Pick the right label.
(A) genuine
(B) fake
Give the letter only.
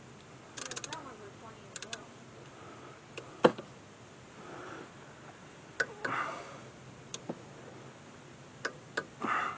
A